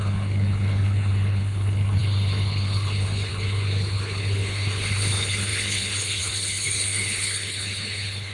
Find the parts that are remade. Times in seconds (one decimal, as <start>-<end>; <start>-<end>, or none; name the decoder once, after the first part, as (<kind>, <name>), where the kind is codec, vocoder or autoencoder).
0.0-8.3 (codec, HILCodec)